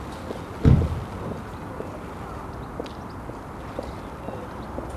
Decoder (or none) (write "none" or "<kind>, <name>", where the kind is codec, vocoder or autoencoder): none